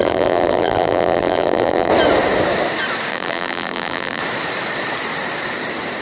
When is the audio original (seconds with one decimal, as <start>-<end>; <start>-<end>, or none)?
1.9-3.1; 4.2-6.0